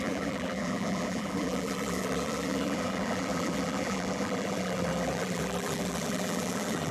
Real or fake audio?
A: fake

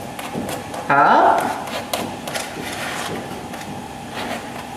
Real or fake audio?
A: real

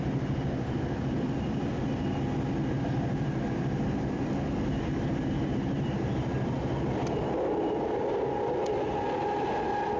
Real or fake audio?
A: real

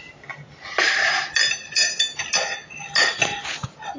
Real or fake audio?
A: real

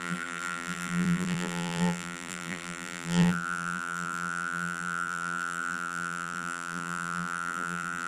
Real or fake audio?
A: fake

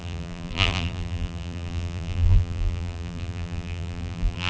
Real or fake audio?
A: fake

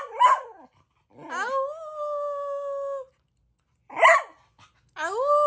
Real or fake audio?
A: real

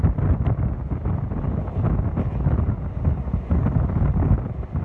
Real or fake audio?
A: real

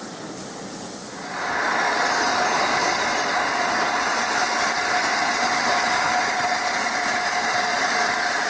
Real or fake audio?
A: real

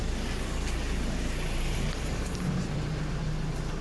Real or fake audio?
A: real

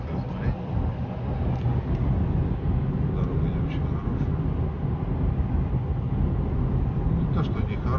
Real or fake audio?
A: real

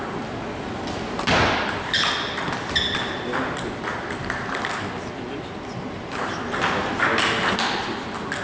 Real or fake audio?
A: real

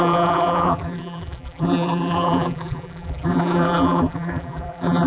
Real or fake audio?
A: fake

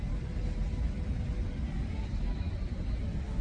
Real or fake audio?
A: real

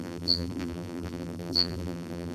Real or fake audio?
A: fake